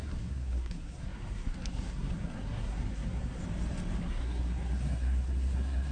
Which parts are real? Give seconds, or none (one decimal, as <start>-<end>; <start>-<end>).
3.4-4.0